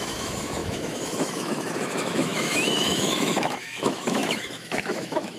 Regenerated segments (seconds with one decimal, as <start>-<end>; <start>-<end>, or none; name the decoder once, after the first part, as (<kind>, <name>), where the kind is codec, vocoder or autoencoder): 0.0-5.4 (autoencoder, DAC-VAE)